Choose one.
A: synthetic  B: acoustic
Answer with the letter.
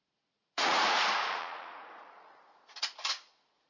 A